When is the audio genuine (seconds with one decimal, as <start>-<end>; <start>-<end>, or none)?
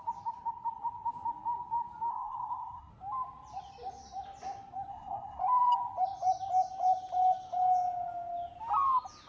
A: 0.0-2.1; 2.9-4.9; 5.4-9.3